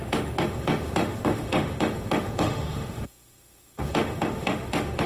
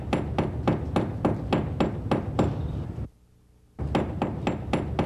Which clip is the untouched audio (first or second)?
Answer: second